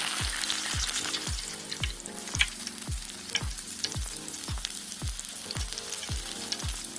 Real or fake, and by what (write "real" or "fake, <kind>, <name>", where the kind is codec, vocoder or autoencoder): real